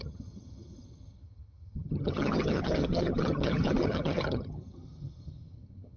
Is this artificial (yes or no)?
yes